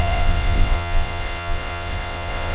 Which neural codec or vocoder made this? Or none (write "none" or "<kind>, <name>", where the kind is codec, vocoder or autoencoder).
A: vocoder, WaveNeXt